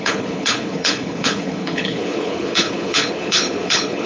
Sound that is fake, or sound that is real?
fake